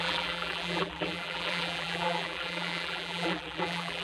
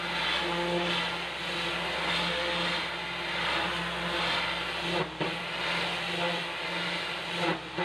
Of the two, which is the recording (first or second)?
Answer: second